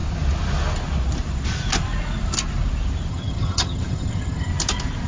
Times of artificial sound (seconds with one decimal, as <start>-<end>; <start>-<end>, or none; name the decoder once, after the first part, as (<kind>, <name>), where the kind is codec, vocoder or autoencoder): 3.1-4.5 (vocoder, HiFi-GAN)